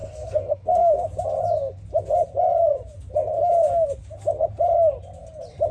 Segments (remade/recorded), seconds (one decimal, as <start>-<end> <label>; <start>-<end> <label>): 0.0-1.1 remade; 1.1-5.7 recorded